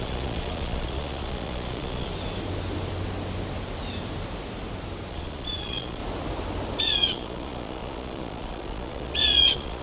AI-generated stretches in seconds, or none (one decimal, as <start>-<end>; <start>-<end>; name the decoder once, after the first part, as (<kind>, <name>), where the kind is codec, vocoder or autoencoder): 0.0-2.1 (vocoder, Vocos); 5.1-6.0; 6.8-9.8